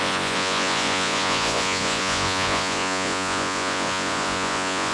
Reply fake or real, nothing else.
fake